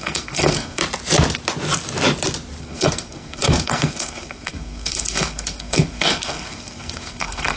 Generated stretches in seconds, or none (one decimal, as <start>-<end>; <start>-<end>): 0.0-0.8; 2.6-7.6